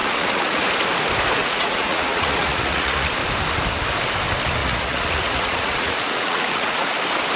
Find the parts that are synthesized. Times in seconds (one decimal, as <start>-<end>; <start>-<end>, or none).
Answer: 0.0-0.6; 1.4-3.1; 4.6-6.9